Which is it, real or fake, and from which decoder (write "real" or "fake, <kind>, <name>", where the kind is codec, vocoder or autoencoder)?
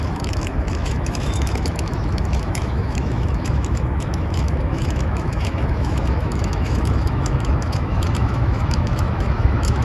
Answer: fake, autoencoder, DAC-VAE